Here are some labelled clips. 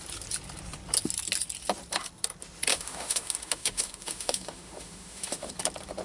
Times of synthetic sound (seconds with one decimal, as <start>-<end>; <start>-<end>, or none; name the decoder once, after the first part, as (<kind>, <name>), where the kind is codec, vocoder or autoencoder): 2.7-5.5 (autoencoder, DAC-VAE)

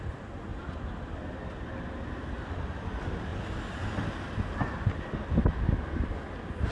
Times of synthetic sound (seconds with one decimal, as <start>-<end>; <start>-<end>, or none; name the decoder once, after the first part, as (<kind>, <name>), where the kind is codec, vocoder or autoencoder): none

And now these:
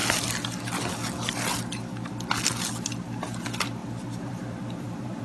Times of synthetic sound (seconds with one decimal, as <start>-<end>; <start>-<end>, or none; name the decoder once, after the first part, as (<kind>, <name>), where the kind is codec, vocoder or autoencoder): 3.8-5.2 (vocoder, BigVGAN v2)

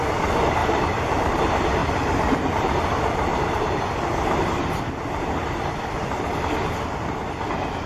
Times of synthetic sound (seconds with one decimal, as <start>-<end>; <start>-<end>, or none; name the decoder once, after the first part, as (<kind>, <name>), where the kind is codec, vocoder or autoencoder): 0.6-1.4 (vocoder, BigVGAN v2); 1.8-2.8; 3.3-4.7

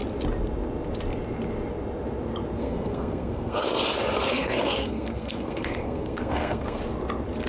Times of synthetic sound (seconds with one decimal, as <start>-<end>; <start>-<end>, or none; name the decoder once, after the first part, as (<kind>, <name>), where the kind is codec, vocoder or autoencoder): 2.6-3.6 (codec, SNAC); 4.3-6.8

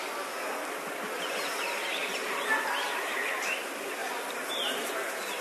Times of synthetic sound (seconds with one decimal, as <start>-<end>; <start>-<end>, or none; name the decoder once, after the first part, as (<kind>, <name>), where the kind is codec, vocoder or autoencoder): 2.0-3.1 (vocoder, BigVGAN v2)

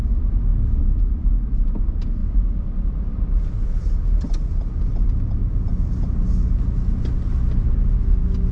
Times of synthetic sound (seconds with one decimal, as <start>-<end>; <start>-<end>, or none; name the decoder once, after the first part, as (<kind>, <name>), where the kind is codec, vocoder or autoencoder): none

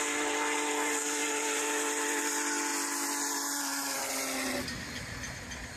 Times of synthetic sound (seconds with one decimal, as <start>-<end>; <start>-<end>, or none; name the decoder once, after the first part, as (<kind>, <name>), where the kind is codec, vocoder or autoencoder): none